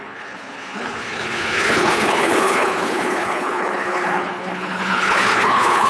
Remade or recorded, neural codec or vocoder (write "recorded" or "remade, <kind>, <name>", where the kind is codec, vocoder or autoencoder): remade, codec, HILCodec